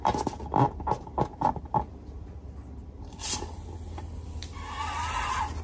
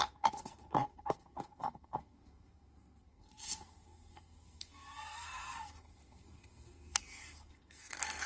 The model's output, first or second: second